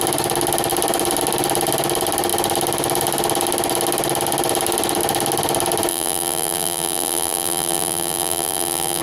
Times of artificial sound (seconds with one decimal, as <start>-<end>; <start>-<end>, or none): 5.9-9.0